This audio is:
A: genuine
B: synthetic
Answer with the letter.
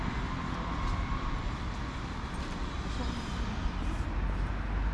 A